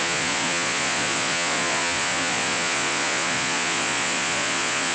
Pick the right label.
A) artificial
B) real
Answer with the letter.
A